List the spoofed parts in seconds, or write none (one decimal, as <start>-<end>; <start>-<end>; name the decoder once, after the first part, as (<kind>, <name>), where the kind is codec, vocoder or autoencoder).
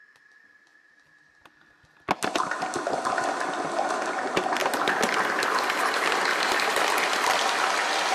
none